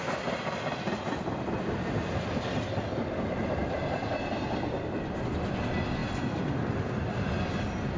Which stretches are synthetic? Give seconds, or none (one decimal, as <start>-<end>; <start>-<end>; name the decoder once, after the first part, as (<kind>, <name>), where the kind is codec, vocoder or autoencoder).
none